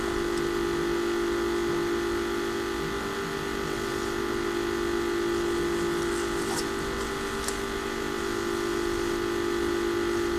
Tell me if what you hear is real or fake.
real